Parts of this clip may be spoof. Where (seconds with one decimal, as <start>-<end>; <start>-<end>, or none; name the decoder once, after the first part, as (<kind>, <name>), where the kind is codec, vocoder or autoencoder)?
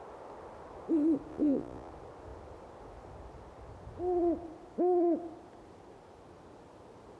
1.3-1.9 (vocoder, Vocos)